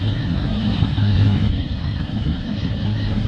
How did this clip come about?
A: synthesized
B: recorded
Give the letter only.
A